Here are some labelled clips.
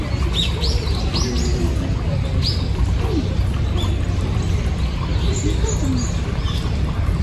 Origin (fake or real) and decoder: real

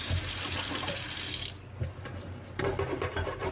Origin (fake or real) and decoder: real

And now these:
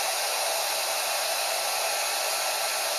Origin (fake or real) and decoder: real